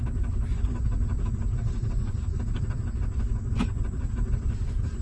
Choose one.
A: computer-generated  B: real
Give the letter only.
B